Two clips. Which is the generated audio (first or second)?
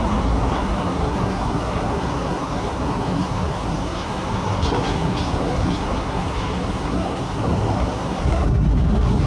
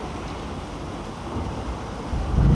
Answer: first